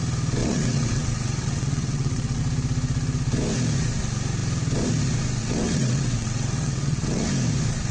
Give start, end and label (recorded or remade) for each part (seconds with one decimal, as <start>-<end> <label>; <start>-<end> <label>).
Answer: 0.0-0.4 recorded; 0.4-2.4 remade; 2.4-5.4 recorded; 5.4-7.3 remade; 7.3-7.9 recorded